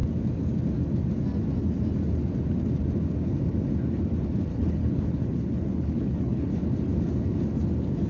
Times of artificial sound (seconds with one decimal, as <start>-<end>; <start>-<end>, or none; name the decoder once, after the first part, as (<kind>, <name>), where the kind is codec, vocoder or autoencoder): 4.5-6.6 (codec, HILCodec)